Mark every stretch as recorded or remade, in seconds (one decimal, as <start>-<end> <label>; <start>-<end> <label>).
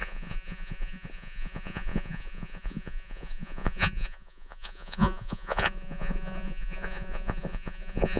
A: 0.0-8.2 remade